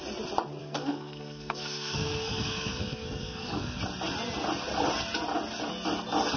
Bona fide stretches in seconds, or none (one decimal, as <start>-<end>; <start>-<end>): 0.0-0.6; 3.8-6.4